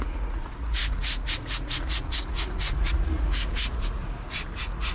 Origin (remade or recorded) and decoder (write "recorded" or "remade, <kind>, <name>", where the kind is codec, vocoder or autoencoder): remade, vocoder, Vocos